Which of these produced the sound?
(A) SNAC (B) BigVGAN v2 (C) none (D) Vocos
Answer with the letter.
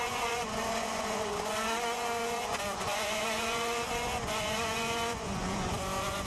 D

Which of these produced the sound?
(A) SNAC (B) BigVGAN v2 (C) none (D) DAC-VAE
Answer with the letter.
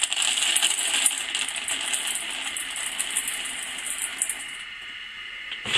C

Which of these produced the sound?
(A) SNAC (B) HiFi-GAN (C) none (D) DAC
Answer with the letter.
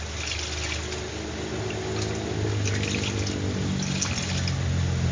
C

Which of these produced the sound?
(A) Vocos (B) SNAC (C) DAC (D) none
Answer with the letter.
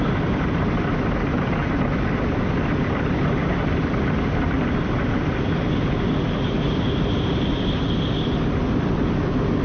D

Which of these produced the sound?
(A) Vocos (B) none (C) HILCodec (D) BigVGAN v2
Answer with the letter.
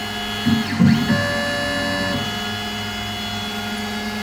B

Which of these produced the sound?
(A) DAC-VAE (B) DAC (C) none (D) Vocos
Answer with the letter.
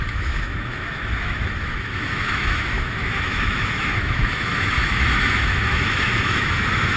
A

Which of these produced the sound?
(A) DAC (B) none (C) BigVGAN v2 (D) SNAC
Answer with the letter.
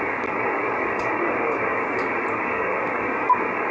A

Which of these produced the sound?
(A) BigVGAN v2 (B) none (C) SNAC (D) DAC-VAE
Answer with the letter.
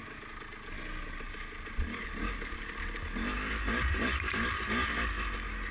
B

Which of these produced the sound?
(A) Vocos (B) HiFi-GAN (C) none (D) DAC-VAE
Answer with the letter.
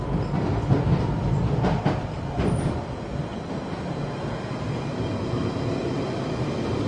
C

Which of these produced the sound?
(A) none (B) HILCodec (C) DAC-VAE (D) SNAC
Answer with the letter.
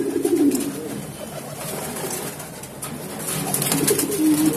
A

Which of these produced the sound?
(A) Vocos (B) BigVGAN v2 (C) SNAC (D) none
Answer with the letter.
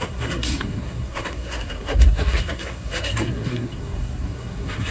C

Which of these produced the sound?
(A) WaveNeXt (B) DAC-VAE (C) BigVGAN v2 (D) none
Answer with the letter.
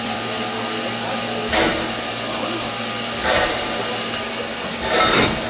D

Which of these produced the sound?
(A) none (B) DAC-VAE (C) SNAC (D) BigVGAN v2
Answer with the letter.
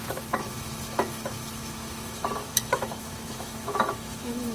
B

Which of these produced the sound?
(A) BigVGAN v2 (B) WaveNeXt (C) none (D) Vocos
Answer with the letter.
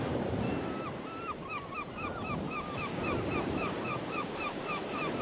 A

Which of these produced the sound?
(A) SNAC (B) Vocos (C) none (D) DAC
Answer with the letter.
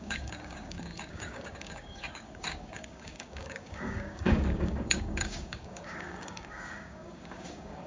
D